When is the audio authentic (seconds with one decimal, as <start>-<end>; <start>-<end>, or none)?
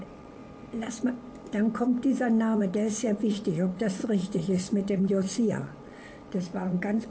0.4-2.6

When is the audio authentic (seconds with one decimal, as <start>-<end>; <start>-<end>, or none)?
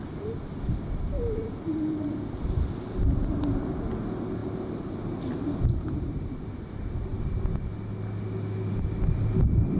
0.0-9.8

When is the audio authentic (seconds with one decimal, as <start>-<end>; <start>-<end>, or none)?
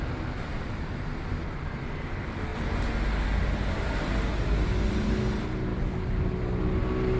0.0-7.2